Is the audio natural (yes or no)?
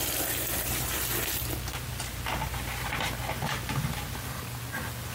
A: yes